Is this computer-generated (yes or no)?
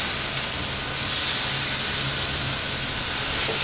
no